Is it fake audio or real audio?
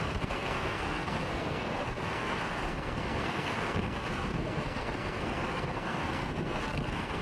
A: fake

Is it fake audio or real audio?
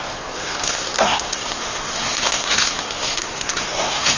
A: fake